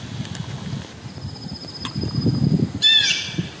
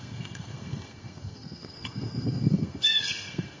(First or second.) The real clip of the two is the first